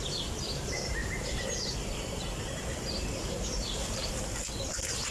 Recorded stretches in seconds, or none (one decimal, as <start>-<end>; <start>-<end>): 0.0-5.1